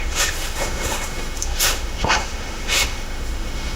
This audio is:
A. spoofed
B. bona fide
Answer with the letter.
A